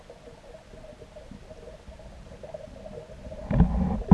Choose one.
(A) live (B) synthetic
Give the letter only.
A